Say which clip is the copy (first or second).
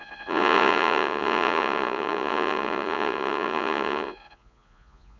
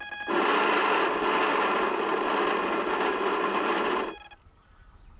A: first